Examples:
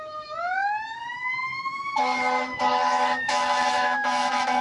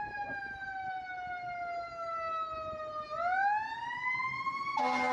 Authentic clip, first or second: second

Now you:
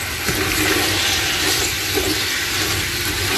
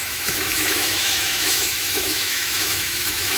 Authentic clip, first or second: first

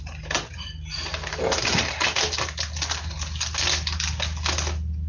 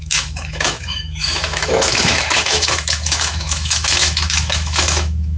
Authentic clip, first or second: first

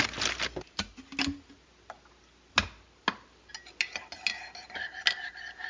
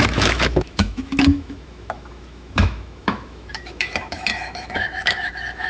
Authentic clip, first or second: first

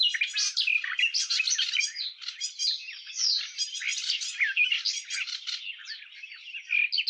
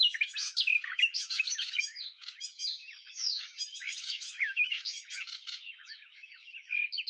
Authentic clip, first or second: first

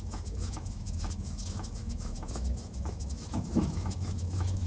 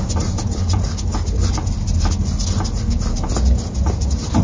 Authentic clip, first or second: second